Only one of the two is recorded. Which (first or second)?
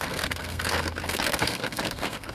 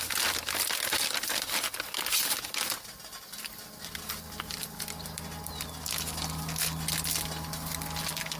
second